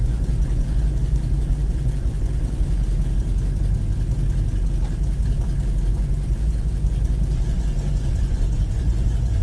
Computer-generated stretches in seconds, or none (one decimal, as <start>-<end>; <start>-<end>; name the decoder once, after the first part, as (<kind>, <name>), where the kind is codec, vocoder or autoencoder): 0.0-2.8 (vocoder, Vocos); 5.9-9.4